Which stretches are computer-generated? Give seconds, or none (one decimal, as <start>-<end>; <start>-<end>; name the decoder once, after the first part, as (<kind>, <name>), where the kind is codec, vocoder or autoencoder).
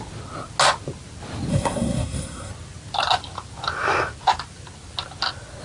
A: 1.5-2.5 (codec, SNAC)